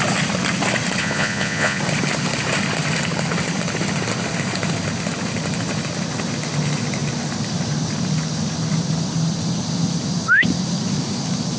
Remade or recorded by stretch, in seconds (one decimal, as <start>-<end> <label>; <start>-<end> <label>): 0.0-1.0 recorded; 1.0-1.8 remade; 1.8-11.6 recorded